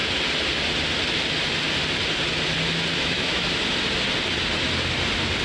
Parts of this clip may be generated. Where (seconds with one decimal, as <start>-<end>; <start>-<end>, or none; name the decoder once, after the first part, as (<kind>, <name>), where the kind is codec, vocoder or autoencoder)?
2.9-3.5 (autoencoder, DAC-VAE)